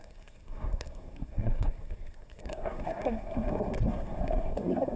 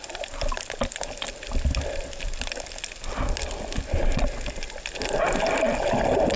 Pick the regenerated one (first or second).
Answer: first